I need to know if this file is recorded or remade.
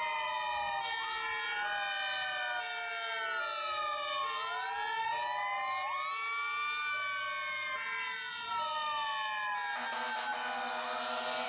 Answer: recorded